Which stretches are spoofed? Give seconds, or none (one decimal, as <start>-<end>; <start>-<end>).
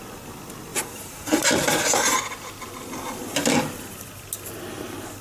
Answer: 0.7-2.2